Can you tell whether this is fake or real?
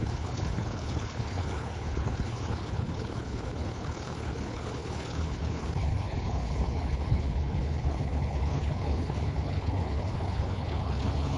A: fake